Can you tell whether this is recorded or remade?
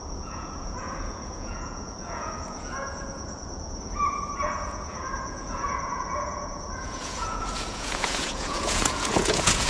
remade